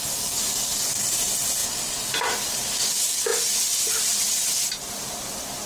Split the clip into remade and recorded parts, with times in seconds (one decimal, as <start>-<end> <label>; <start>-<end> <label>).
0.0-3.3 recorded; 3.3-4.9 remade; 4.9-5.7 recorded